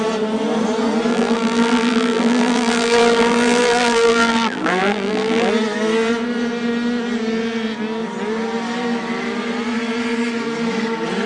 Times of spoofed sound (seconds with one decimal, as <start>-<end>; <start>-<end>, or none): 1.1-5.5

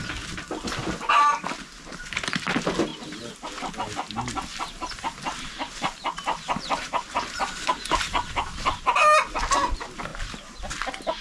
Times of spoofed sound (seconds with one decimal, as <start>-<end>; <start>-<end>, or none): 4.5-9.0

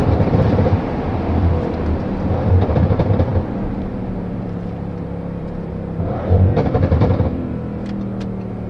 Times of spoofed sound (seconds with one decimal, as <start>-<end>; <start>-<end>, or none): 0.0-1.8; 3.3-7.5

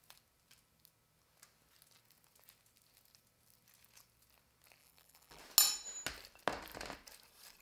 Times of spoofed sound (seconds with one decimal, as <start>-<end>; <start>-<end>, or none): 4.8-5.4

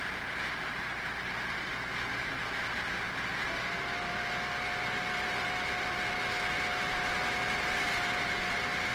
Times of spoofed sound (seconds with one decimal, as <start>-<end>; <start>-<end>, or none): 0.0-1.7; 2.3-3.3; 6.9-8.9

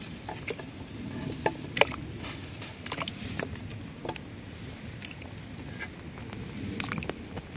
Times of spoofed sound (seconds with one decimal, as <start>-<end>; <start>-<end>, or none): 0.0-2.4; 6.4-7.6

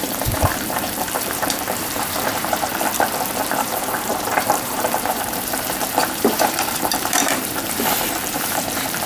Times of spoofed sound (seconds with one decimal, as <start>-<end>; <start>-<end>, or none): 0.0-2.7; 3.5-9.1